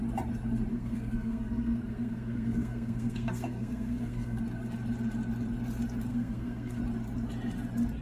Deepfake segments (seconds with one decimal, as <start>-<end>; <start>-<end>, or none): 0.7-4.4; 6.1-6.8